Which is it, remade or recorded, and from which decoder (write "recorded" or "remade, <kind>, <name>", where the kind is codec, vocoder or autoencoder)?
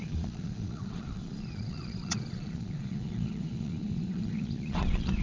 remade, vocoder, Vocos